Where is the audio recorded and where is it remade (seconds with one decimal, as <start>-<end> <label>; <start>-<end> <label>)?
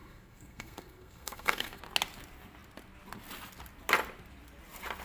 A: 0.0-1.8 remade; 1.8-5.0 recorded